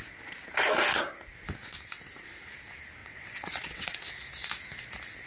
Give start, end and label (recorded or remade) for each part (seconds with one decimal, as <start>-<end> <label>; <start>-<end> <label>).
0.0-3.0 recorded; 3.0-4.1 remade; 4.1-5.3 recorded